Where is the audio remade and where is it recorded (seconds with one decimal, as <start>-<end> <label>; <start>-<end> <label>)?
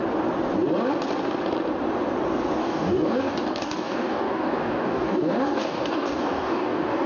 0.0-2.6 recorded; 2.6-7.1 remade